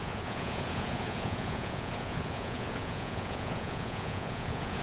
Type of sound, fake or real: fake